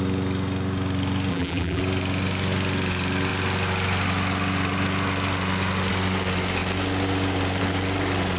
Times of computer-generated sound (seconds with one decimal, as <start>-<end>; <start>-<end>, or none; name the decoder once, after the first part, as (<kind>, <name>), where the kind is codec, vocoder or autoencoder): 1.3-1.8 (vocoder, BigVGAN v2)